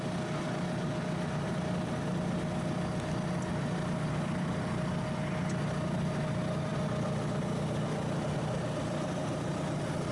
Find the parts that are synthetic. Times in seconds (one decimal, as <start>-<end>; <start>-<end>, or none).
none

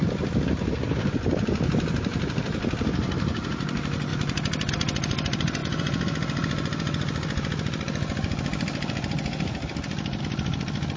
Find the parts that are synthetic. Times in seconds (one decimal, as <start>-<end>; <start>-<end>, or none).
2.1-3.5; 4.1-4.7; 5.6-10.2

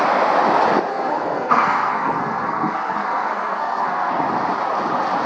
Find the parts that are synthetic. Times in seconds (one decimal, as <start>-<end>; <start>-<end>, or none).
0.9-4.1